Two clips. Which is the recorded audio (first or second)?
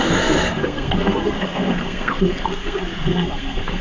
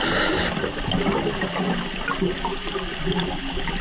second